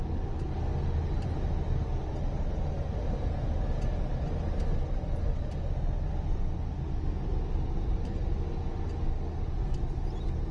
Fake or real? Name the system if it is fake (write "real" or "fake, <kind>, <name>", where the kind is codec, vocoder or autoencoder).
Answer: real